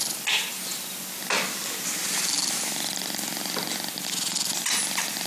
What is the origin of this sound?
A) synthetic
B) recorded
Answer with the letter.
B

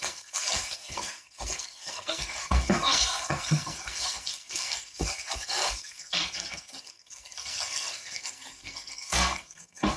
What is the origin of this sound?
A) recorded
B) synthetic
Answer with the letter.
B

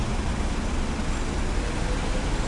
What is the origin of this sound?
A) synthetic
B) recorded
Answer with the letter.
B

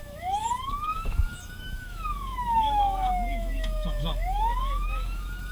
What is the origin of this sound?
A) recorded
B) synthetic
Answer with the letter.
B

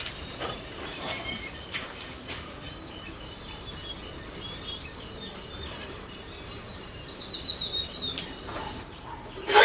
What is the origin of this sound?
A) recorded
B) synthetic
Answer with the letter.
B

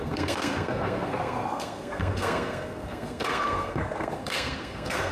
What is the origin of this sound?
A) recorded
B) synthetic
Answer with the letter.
B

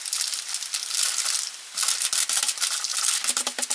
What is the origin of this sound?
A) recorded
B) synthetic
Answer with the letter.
A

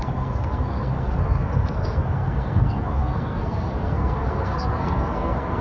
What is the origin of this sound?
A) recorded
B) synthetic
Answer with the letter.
B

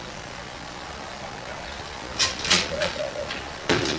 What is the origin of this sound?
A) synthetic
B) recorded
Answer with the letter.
A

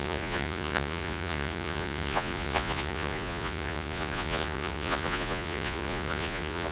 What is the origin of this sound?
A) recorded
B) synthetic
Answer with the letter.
B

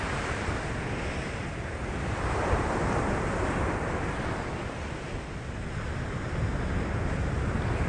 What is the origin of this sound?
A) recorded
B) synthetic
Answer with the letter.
A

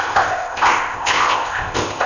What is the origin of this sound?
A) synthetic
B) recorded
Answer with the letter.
A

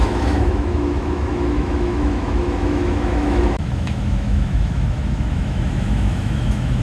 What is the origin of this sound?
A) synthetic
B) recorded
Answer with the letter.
A